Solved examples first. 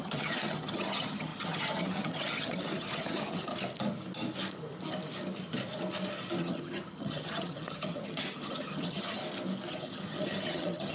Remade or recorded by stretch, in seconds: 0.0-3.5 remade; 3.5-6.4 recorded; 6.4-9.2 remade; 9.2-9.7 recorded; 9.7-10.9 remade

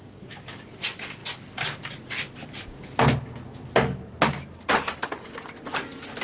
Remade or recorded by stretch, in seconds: 0.0-0.6 remade; 0.6-6.2 recorded

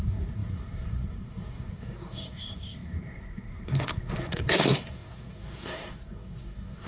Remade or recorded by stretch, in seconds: 0.0-6.9 remade

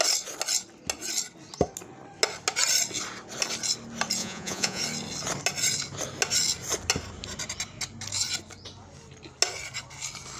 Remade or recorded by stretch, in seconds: 0.0-4.2 recorded; 4.2-4.8 remade; 4.8-10.4 recorded

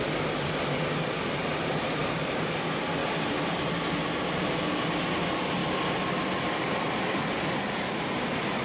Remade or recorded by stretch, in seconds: 0.0-1.4 recorded; 1.4-2.4 remade; 2.4-3.0 recorded; 3.0-4.7 remade; 4.7-8.6 recorded

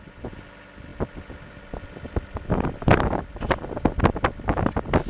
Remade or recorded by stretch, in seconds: 0.0-5.1 recorded